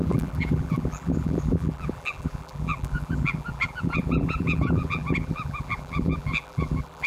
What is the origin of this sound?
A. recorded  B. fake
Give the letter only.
B